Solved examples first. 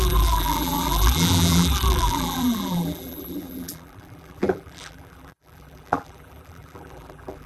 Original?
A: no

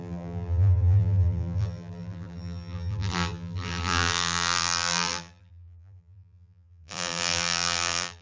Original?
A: no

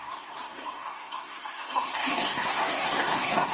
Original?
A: no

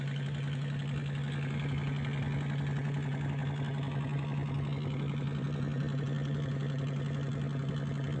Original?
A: yes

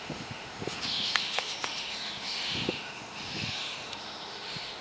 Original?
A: no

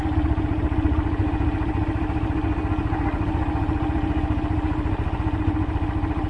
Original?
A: yes